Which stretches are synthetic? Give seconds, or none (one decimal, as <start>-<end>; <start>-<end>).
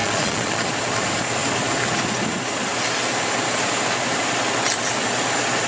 0.0-0.7